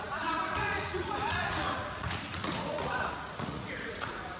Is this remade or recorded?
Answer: remade